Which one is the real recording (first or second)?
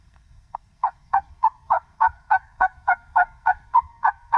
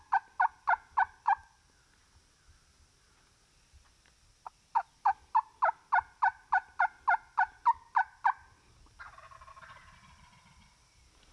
second